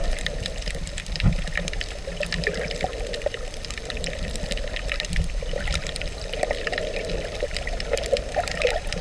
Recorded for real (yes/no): no